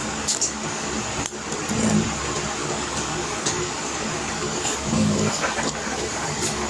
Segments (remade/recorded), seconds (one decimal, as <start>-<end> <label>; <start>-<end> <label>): 0.0-0.9 remade; 0.9-2.6 recorded; 2.6-6.7 remade